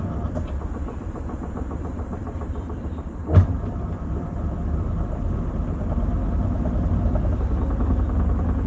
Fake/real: fake